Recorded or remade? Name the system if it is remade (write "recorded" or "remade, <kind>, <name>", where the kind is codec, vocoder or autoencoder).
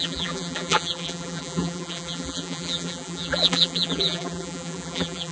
remade, vocoder, BigVGAN v2